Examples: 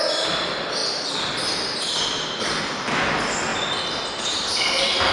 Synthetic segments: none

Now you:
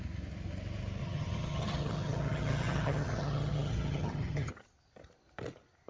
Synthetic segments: 1.0-4.5